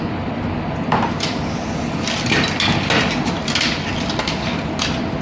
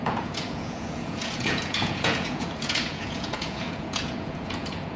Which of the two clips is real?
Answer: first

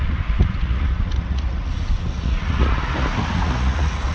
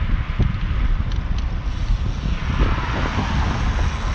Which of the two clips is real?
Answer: second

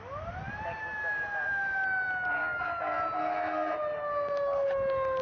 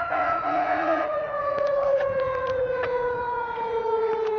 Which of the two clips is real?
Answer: first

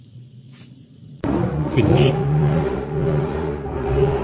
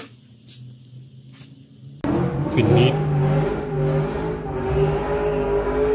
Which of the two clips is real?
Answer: second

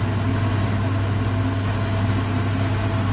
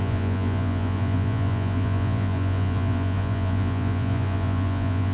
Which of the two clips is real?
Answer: first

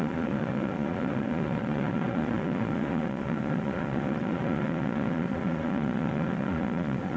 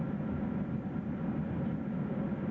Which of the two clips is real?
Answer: second